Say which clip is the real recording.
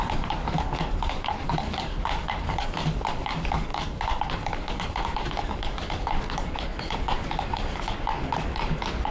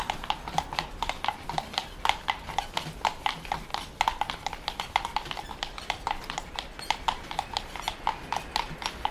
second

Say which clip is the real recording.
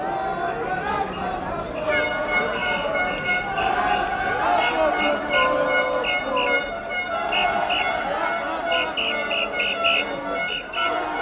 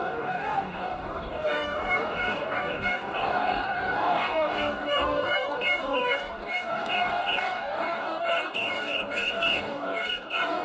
first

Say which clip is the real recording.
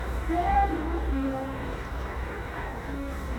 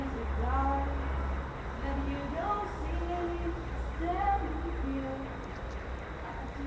second